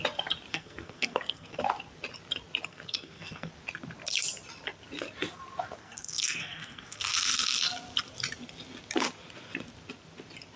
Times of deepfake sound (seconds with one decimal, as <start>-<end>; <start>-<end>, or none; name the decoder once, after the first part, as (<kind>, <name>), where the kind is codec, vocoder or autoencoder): 0.5-1.6 (codec, SNAC); 2.7-3.5; 5.8-7.6